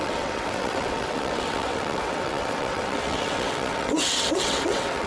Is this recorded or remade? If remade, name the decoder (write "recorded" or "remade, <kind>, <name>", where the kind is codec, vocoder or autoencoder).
remade, vocoder, WaveNeXt